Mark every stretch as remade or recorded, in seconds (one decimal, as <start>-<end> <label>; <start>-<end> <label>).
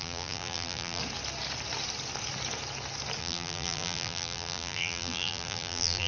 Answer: 0.0-1.0 remade; 1.0-3.2 recorded; 3.2-6.1 remade